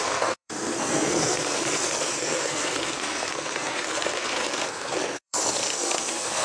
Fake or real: fake